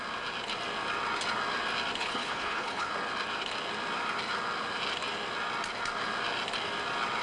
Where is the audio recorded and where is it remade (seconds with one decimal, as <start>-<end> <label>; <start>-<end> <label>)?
0.0-2.0 recorded; 2.0-2.9 remade; 2.9-7.2 recorded